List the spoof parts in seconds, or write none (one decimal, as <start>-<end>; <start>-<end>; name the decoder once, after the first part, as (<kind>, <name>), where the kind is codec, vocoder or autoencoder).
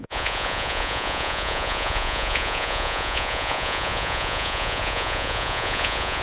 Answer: 0.0-6.2 (vocoder, Vocos)